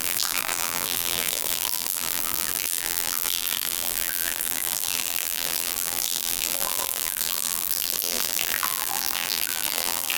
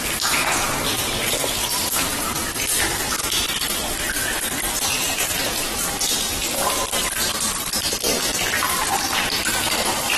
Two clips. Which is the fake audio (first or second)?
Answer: first